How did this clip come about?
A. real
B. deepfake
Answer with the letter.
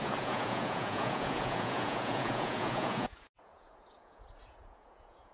B